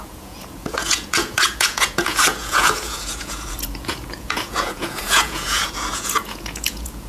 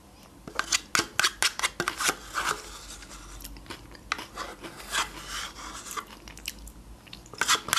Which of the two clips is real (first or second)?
second